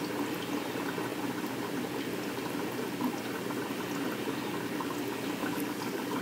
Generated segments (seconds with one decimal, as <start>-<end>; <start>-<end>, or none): 5.4-6.2